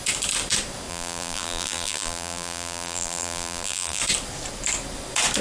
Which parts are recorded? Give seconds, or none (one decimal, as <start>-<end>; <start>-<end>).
0.0-0.9; 4.0-5.4